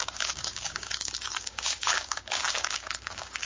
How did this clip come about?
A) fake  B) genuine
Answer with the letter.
A